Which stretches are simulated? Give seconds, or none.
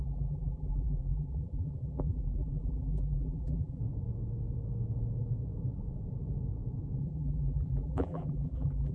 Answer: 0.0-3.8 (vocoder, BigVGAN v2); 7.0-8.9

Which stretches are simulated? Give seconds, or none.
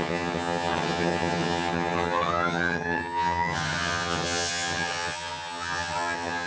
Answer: 0.0-6.5 (vocoder, HiFi-GAN)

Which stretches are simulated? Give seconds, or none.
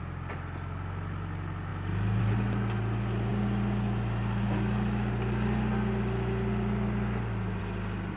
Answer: none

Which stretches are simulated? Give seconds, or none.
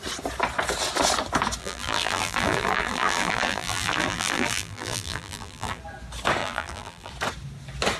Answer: 1.6-5.8 (vocoder, BigVGAN v2); 6.4-7.1